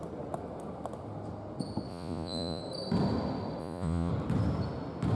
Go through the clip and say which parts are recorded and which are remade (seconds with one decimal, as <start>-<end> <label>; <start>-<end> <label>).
0.0-1.9 recorded; 1.9-2.6 remade; 2.6-3.6 recorded; 3.6-4.1 remade; 4.1-5.2 recorded